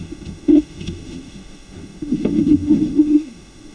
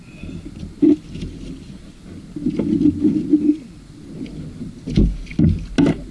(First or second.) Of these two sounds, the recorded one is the second